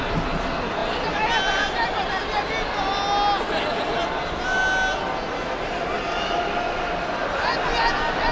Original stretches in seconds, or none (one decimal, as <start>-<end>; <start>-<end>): 0.0-8.3